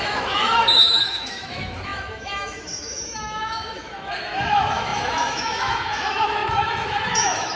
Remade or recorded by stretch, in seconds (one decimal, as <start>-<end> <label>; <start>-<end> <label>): 0.0-7.6 remade